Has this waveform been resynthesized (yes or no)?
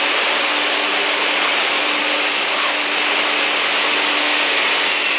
no